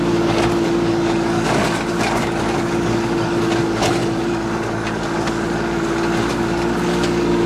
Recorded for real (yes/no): no